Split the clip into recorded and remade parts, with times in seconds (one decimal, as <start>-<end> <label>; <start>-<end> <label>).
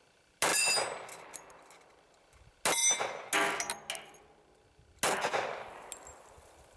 0.0-6.8 recorded